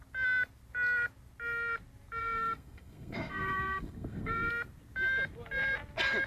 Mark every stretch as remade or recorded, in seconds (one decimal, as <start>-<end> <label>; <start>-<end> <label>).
0.0-2.2 recorded; 2.2-4.5 remade; 4.5-6.3 recorded